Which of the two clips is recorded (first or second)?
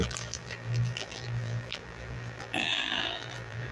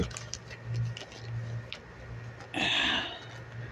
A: second